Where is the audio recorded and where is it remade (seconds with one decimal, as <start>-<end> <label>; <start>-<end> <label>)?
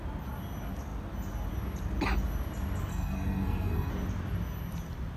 0.0-2.9 recorded; 2.9-3.9 remade; 3.9-5.2 recorded